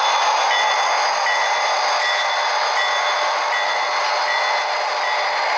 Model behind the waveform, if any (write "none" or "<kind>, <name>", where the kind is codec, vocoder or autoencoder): none